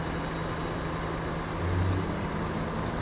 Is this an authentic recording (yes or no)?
yes